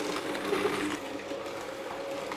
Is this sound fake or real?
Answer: real